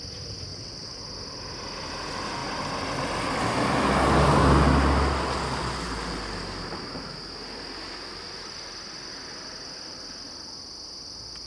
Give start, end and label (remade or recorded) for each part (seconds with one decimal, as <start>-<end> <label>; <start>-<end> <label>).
0.0-0.5 recorded; 0.5-1.0 remade; 1.0-11.5 recorded